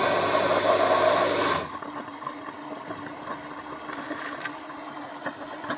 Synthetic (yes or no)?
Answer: no